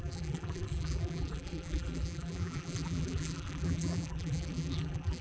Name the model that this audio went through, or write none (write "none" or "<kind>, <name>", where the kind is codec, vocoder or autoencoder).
vocoder, BigVGAN v2